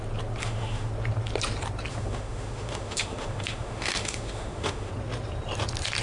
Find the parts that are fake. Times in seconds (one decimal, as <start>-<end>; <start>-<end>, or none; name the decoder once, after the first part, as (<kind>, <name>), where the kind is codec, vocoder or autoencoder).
0.4-0.9 (autoencoder, DAC-VAE); 1.9-4.9